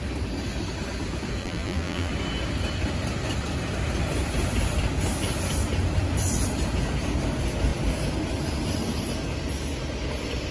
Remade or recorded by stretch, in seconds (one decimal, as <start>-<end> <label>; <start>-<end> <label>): 0.0-1.4 recorded; 1.4-2.1 remade; 2.1-10.5 recorded